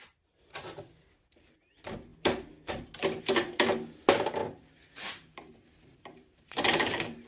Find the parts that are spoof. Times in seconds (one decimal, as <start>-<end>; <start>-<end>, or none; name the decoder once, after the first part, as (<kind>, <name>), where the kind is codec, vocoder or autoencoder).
4.4-7.3 (vocoder, BigVGAN v2)